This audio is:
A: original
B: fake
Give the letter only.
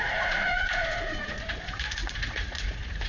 B